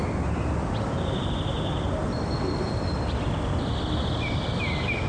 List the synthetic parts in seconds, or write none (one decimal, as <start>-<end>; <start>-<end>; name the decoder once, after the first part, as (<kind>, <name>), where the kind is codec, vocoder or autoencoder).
none